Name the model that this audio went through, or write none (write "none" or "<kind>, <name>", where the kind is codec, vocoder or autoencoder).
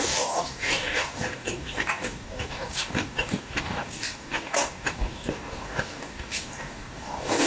codec, DAC